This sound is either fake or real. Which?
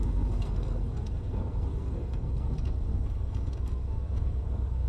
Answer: fake